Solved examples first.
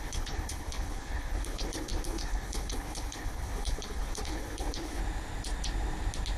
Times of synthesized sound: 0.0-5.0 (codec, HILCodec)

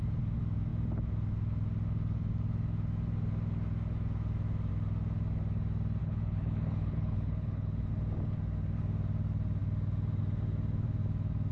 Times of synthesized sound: 6.0-7.9 (codec, HILCodec)

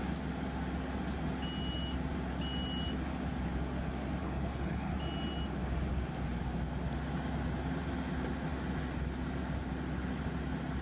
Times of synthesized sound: 4.2-4.9 (codec, HILCodec)

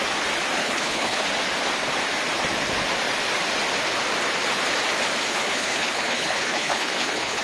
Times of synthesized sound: 0.6-1.2 (codec, HILCodec); 5.3-7.4

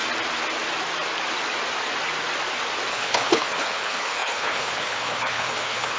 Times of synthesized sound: 2.9-6.0 (codec, HILCodec)

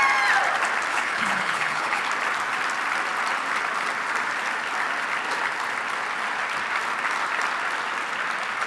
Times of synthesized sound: 0.9-2.0 (codec, HILCodec)

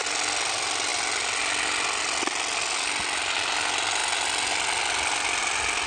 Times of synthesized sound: none

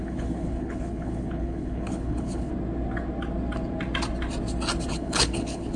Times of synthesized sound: 0.0-2.5 (codec, HILCodec); 4.9-5.8